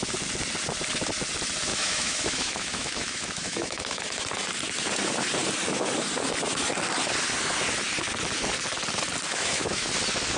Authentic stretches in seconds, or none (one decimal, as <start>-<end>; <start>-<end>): 0.0-1.7; 4.0-9.3; 9.9-10.4